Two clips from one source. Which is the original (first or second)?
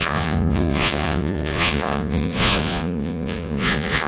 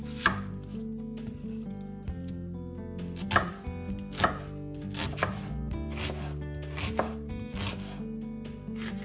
second